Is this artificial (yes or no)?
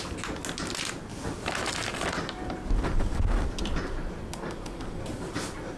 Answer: no